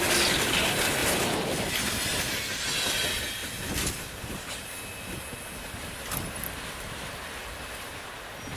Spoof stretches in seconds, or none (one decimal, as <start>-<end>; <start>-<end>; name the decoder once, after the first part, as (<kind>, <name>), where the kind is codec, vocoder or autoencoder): 1.0-1.7 (vocoder, BigVGAN v2); 3.4-6.0